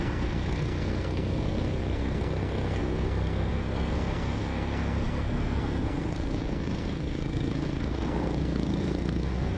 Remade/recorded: remade